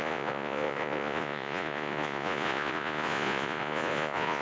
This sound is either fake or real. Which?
fake